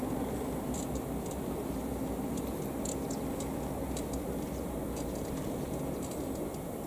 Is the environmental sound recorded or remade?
recorded